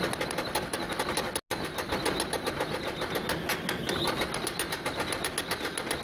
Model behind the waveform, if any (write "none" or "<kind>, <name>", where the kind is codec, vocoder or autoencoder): none